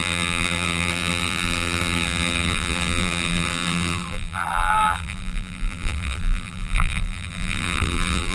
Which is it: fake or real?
fake